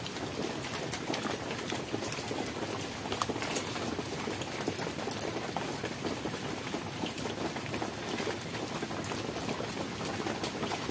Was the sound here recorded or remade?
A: recorded